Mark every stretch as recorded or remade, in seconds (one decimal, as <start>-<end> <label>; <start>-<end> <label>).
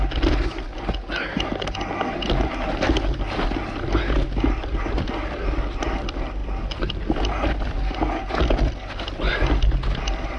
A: 0.0-10.4 recorded